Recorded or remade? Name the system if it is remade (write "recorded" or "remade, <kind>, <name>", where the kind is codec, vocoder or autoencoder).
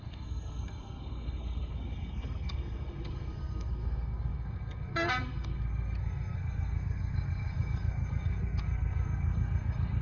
remade, codec, SNAC